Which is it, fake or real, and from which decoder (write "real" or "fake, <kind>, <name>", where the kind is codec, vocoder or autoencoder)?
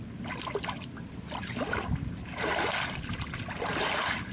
real